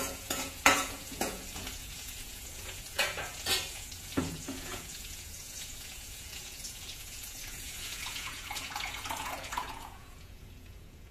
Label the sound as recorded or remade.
remade